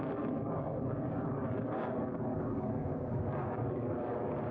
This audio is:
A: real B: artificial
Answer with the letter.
B